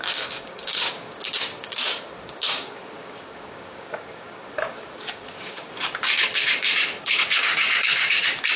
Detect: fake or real fake